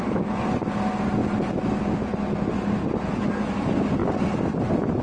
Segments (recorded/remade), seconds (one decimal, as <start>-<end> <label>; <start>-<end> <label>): 0.0-5.0 recorded